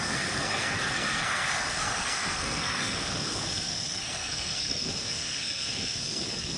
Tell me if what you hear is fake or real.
fake